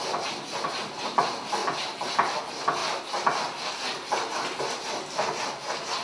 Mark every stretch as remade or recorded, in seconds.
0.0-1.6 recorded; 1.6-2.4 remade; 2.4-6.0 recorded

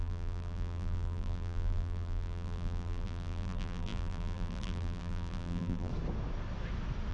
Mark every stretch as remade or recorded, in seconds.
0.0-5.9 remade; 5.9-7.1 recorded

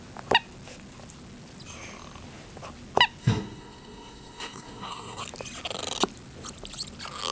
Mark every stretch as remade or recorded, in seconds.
0.0-3.2 recorded; 3.2-5.2 remade; 5.2-7.3 recorded